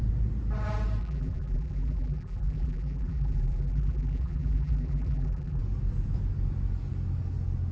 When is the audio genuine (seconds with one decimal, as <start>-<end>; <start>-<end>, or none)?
0.0-1.0; 5.6-7.7